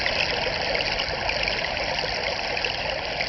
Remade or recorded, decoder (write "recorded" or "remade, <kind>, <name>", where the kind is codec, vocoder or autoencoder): recorded